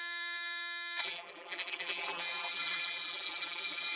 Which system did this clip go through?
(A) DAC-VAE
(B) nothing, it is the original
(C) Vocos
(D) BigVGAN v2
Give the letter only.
D